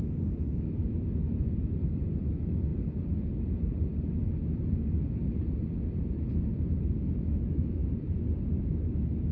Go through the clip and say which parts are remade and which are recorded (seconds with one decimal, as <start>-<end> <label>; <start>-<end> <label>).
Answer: 0.0-2.7 remade; 2.7-7.1 recorded; 7.1-7.8 remade; 7.8-8.6 recorded; 8.6-9.3 remade